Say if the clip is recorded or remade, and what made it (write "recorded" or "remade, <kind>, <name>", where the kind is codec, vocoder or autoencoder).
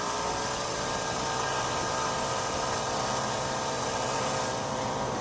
recorded